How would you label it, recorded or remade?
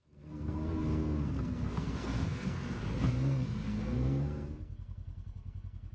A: remade